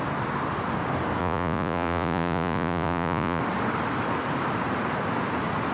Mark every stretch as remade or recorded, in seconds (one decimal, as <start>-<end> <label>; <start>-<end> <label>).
0.0-1.2 recorded; 1.2-3.4 remade; 3.4-5.7 recorded